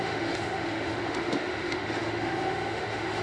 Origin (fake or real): fake